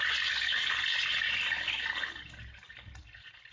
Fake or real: real